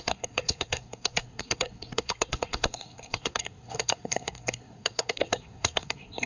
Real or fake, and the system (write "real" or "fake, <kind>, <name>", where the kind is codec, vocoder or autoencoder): fake, codec, SNAC